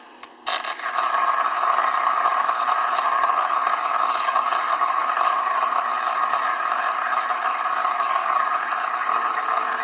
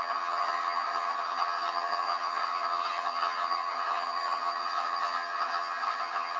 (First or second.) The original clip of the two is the first